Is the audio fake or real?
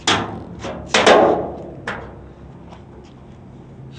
real